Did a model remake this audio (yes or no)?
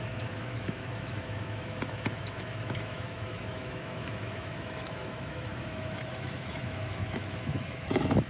yes